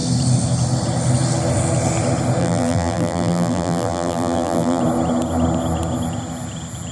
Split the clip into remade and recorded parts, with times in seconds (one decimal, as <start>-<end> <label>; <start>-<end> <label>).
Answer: 0.0-2.4 recorded; 2.4-4.8 remade; 4.8-6.9 recorded